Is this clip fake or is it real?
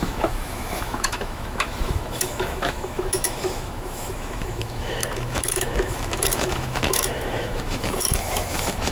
fake